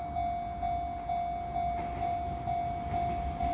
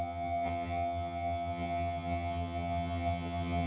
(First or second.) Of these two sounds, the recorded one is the first